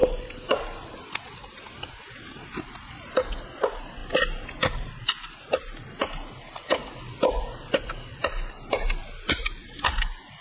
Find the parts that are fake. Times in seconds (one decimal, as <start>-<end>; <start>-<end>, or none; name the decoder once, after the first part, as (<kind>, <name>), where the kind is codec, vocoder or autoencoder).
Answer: none